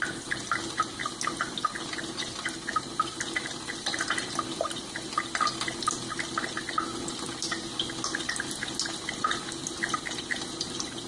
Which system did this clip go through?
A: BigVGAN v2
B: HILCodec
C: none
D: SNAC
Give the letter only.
C